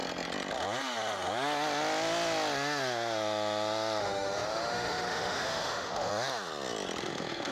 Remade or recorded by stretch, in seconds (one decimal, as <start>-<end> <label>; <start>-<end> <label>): 0.0-4.0 recorded; 4.0-6.1 remade; 6.1-7.0 recorded; 7.0-7.5 remade